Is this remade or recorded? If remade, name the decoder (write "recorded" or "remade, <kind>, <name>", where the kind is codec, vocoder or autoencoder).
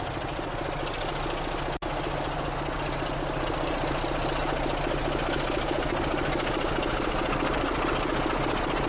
recorded